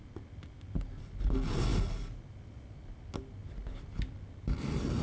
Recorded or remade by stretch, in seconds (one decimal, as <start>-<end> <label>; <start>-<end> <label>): 0.0-5.0 recorded